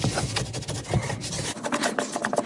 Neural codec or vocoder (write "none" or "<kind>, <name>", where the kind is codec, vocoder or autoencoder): none